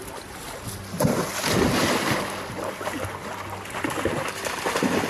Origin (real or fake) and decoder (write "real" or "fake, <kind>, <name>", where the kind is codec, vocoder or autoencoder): real